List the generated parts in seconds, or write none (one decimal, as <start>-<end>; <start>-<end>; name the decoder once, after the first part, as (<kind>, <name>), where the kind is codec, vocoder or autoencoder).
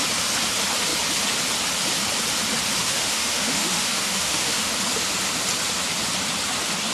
2.8-4.7 (autoencoder, DAC-VAE)